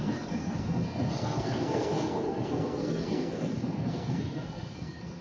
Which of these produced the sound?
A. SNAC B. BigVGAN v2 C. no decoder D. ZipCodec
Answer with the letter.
A